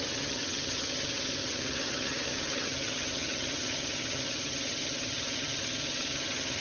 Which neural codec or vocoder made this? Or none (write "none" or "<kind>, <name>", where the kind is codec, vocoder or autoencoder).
vocoder, HiFi-GAN